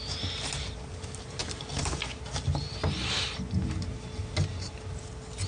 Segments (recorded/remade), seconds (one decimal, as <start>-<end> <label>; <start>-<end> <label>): 0.0-5.5 recorded